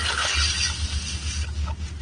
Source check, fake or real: real